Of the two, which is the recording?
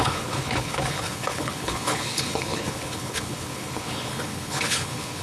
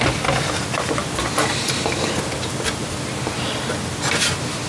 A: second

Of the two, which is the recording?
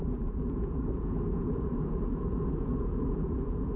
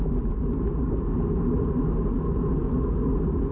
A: second